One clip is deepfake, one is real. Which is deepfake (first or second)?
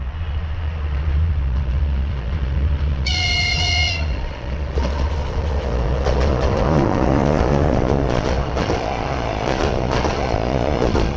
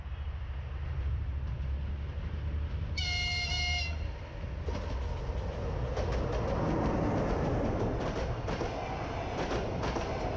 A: first